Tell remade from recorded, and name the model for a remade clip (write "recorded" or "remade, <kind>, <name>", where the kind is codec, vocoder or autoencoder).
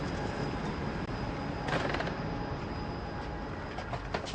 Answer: remade, vocoder, BigVGAN v2